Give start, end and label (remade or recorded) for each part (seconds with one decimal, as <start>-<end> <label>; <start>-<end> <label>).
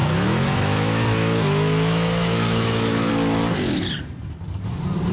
0.0-3.1 remade; 3.1-5.1 recorded